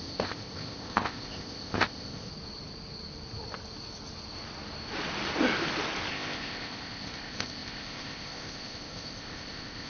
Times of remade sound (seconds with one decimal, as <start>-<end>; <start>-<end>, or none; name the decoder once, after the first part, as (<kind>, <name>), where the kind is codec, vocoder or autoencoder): 0.0-2.3 (codec, ZipCodec); 6.1-9.9